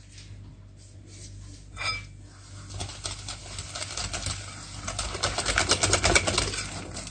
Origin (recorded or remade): recorded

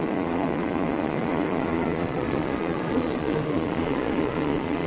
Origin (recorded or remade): remade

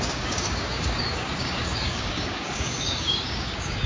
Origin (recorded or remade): remade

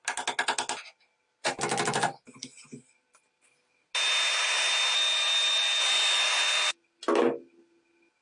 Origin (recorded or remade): recorded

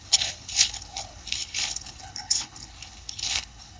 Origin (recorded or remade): remade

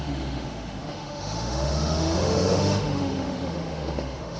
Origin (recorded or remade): remade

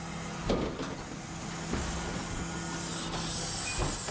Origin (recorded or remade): recorded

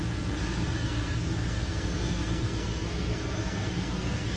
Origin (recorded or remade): remade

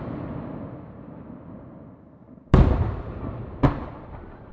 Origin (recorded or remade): recorded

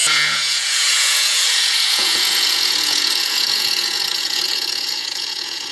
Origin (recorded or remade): remade